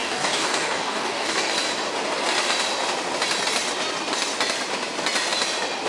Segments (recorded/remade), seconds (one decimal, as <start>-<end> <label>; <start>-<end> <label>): 0.0-1.5 remade; 1.5-5.9 recorded